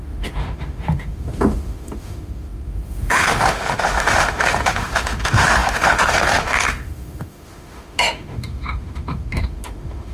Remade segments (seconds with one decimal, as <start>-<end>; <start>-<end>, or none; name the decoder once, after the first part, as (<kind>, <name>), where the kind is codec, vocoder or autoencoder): 0.0-10.1 (autoencoder, DAC-VAE)